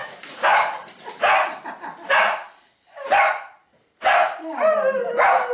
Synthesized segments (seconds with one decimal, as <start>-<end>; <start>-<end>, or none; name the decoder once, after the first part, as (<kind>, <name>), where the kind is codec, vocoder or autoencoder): none